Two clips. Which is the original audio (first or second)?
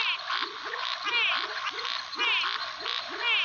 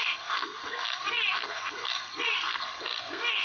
first